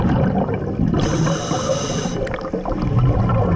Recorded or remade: recorded